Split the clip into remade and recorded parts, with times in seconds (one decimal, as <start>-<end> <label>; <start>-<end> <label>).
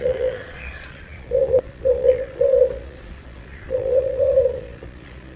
0.0-5.4 remade